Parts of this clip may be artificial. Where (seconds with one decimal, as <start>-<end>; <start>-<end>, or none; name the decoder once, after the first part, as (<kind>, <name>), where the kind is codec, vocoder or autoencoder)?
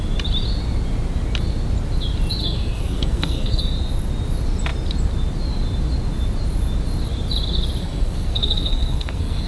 2.4-3.6 (codec, SNAC); 7.8-9.5